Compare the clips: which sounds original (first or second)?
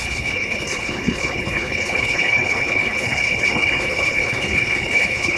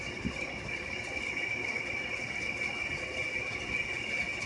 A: second